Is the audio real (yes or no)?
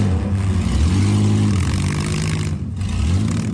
yes